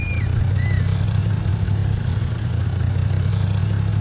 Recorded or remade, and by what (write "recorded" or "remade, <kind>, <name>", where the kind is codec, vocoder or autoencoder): recorded